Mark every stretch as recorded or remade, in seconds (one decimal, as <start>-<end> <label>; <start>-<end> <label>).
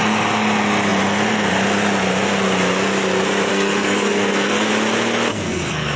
0.0-3.5 recorded; 3.5-4.7 remade; 4.7-5.3 recorded; 5.3-6.0 remade